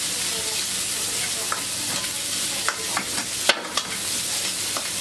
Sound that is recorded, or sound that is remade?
recorded